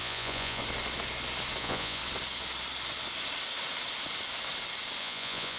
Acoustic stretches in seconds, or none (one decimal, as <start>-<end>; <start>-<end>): 0.6-1.6; 2.0-5.0